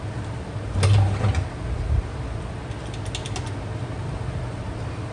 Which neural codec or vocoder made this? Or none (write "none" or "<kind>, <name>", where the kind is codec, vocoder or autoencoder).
none